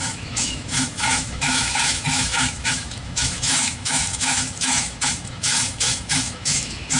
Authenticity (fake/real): fake